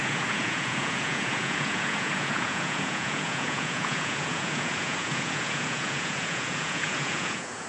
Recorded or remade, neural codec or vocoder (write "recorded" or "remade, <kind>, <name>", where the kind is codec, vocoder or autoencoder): remade, vocoder, Vocos